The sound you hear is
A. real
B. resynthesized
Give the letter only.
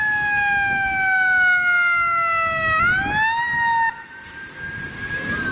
A